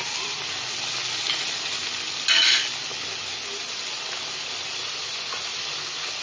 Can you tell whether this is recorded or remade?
recorded